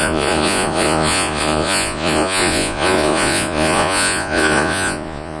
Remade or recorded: remade